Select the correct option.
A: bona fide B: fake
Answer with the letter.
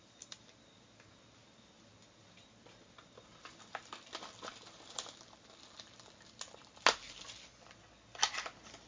A